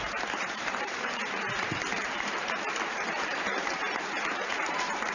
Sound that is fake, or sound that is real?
fake